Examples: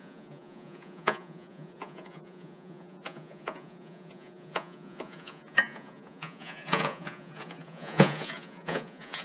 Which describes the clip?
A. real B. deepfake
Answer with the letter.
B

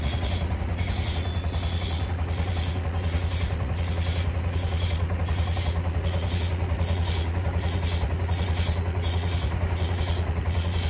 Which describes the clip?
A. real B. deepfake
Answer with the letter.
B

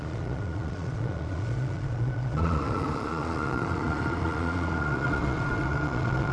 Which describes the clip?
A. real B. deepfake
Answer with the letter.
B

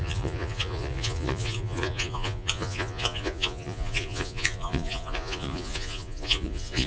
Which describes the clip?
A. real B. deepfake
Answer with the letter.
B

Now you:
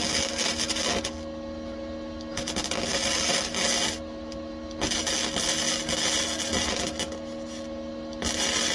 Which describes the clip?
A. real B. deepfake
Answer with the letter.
A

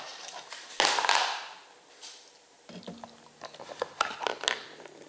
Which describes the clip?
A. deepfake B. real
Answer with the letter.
B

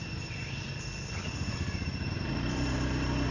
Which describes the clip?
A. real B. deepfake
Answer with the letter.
A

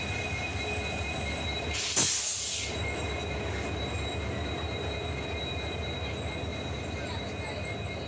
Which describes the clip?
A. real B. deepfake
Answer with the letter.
A